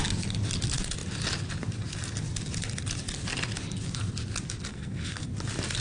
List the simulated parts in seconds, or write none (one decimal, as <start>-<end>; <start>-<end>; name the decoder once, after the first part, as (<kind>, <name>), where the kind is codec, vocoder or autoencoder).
4.7-5.3 (codec, SNAC)